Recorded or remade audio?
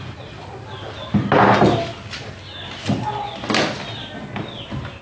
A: recorded